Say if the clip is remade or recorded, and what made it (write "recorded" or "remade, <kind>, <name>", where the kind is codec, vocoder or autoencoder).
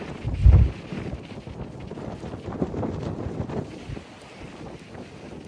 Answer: recorded